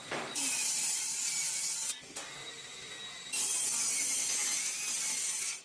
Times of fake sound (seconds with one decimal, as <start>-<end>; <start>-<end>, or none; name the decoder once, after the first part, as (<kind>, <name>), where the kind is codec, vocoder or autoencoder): 0.0-1.0 (vocoder, BigVGAN v2); 4.4-5.6